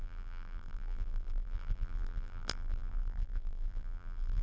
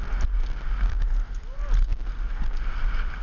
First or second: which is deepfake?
first